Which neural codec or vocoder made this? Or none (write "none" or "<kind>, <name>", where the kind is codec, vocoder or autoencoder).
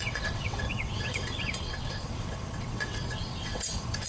vocoder, WaveNeXt